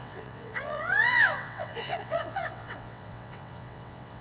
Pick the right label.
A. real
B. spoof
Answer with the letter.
B